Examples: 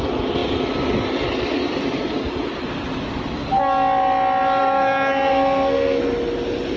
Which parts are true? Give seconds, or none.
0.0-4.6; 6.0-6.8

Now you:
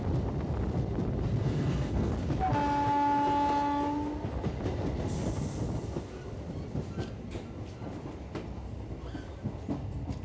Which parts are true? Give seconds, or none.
0.0-1.4; 2.1-10.2

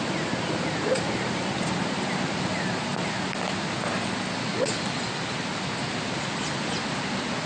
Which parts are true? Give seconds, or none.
0.0-7.5

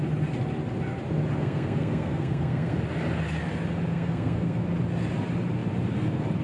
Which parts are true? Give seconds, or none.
0.0-1.4; 2.8-3.9; 4.6-6.4

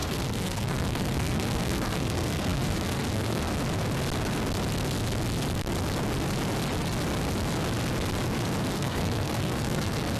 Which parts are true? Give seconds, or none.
3.5-8.7

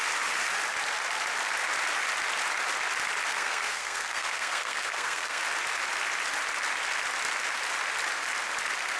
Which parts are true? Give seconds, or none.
0.0-3.3; 5.4-9.0

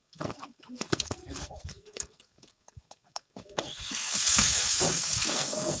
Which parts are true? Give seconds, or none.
none